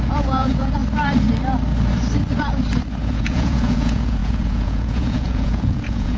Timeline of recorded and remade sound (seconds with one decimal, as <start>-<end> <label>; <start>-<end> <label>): 0.0-0.8 remade; 0.8-3.0 recorded; 3.0-6.2 remade